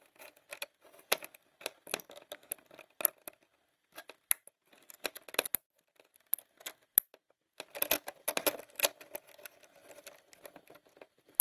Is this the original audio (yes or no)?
yes